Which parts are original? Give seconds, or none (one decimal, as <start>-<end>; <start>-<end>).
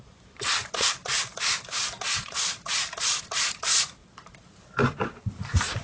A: 0.0-0.6; 3.6-4.0; 5.3-5.8